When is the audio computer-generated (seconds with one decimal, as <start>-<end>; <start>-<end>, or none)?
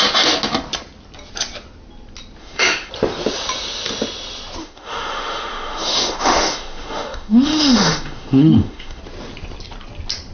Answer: 2.4-2.9; 4.6-9.0